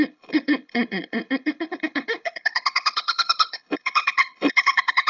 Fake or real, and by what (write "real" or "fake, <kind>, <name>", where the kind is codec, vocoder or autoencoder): fake, codec, HILCodec